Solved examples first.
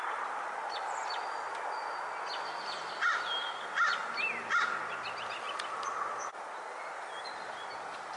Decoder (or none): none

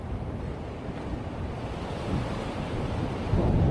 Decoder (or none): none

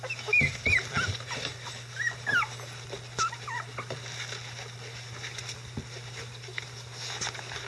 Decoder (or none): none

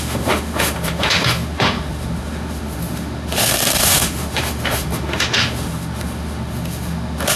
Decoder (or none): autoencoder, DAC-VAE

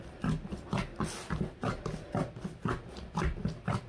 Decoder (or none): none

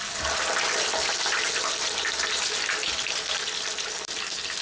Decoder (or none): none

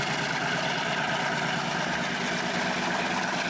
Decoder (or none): none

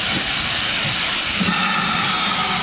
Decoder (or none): none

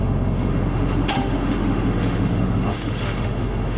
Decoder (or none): autoencoder, DAC-VAE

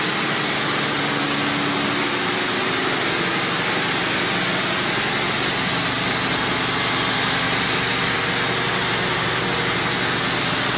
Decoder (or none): none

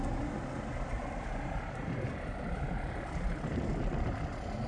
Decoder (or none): none